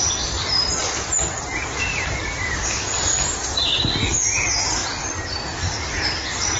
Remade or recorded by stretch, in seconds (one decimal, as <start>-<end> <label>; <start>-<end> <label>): 0.0-0.7 recorded; 0.7-2.6 remade; 2.6-4.8 recorded; 4.8-5.3 remade; 5.3-6.6 recorded